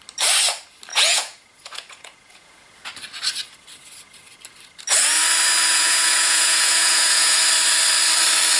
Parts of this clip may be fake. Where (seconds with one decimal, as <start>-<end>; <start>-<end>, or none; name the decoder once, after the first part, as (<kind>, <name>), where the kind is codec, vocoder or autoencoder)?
0.9-2.9 (vocoder, Vocos); 5.7-7.4